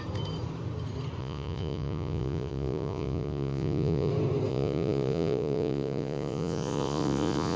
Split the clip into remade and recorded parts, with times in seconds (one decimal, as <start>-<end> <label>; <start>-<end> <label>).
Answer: 0.0-1.2 recorded; 1.2-4.1 remade; 4.1-4.5 recorded; 4.5-7.6 remade